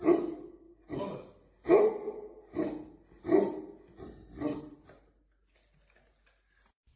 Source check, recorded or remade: recorded